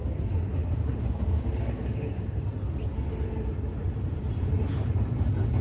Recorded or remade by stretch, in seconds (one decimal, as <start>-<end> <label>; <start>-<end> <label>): 0.0-0.6 recorded; 0.6-2.4 remade; 2.4-5.6 recorded